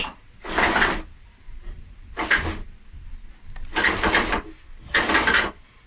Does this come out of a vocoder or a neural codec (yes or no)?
no